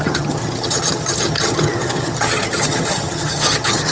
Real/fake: fake